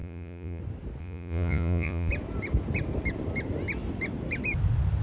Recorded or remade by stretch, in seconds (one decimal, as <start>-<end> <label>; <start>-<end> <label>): 0.0-0.6 remade; 0.6-1.0 recorded; 1.0-2.1 remade; 2.1-5.0 recorded